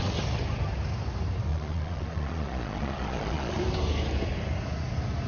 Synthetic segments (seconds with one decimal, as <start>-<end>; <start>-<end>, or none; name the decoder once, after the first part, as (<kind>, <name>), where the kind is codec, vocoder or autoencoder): 1.5-3.6 (vocoder, Vocos)